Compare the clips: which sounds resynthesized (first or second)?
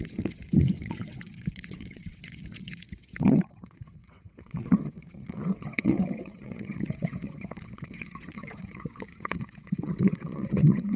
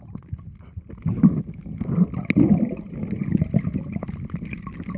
first